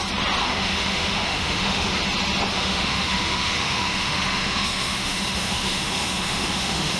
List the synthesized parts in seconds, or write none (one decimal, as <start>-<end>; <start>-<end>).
0.4-2.0; 2.5-7.0